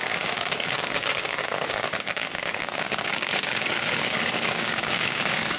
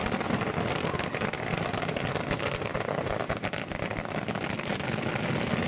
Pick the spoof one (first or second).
first